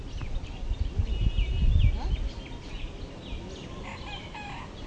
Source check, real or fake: real